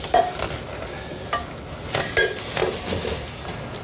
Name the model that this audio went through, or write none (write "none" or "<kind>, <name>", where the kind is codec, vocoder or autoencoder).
none